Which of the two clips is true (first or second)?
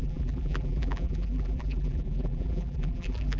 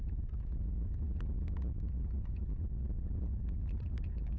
second